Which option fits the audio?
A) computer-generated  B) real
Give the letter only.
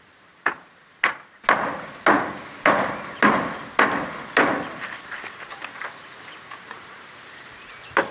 B